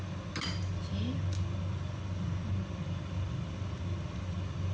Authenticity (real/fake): real